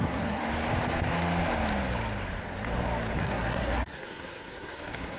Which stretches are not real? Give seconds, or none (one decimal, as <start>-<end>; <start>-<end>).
0.0-0.4; 3.2-5.2